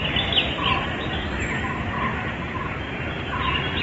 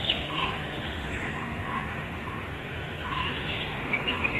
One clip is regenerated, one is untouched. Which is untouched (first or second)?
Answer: first